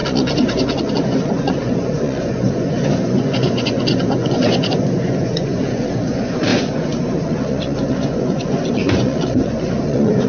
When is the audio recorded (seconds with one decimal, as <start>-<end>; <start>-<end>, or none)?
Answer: none